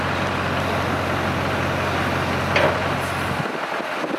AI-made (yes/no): no